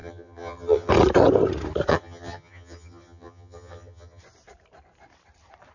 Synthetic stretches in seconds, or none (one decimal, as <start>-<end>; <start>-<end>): 0.0-0.9; 1.9-4.2